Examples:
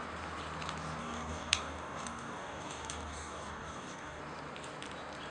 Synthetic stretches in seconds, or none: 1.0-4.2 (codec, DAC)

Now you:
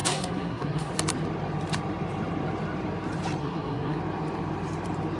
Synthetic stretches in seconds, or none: 0.0-0.9 (codec, SNAC); 3.4-4.0